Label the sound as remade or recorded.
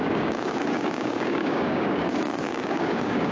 remade